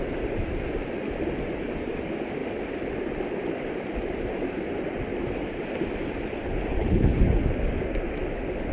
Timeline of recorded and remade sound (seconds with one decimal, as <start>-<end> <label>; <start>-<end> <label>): 0.0-6.8 recorded; 6.8-7.4 remade; 7.4-8.7 recorded